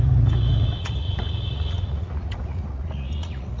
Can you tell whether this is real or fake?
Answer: fake